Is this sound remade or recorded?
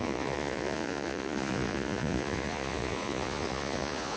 remade